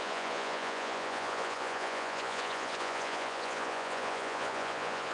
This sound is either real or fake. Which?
fake